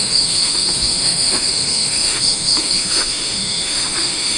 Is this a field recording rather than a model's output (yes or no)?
no